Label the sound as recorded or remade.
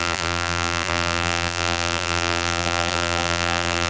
remade